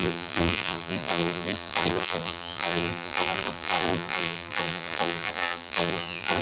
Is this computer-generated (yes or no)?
yes